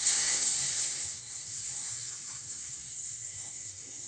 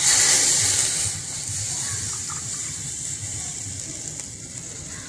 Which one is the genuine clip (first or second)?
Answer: second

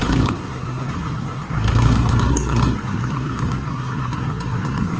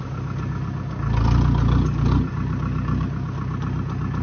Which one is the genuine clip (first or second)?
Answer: second